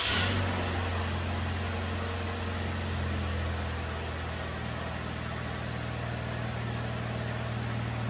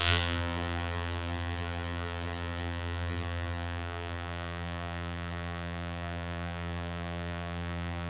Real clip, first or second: first